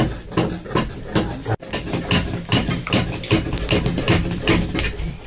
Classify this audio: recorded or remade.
recorded